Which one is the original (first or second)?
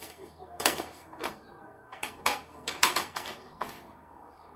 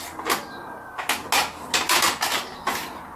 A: second